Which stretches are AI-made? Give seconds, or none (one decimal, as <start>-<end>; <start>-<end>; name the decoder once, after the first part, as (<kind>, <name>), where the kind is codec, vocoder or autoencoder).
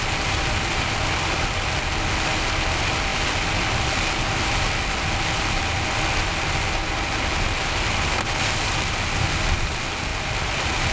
none